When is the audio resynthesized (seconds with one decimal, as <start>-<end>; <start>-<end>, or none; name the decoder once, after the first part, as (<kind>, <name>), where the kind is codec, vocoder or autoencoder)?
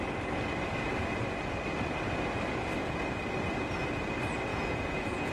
4.5-5.3 (vocoder, Vocos)